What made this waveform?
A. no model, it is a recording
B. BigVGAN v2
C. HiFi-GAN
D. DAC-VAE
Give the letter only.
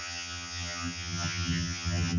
C